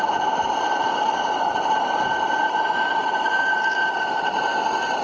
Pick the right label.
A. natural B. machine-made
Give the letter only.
A